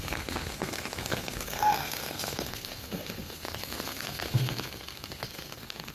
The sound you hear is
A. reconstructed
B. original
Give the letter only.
A